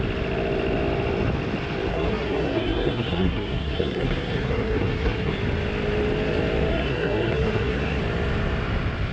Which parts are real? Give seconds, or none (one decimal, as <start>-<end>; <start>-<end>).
0.0-1.9; 5.3-6.7; 8.0-9.1